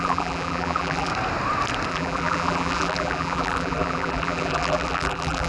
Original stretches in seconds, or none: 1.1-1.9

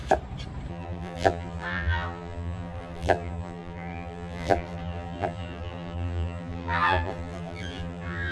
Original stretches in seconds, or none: 0.0-0.7

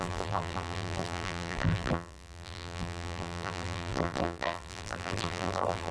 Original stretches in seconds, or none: none

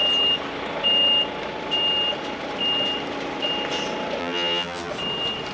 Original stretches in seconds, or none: 0.0-4.2; 4.9-5.5

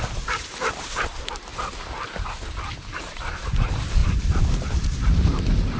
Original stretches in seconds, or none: 1.5-2.9

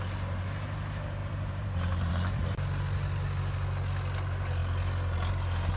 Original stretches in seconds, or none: 0.0-1.2; 2.1-5.8

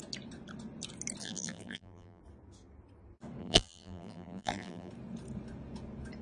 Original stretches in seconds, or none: 0.0-1.2; 2.2-3.4; 4.9-6.2